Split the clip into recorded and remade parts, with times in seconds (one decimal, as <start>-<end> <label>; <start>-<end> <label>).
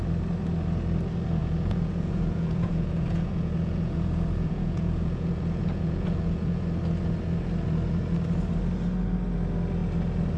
0.0-1.4 recorded; 1.4-6.6 remade; 6.6-10.4 recorded